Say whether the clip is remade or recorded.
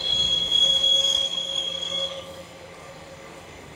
remade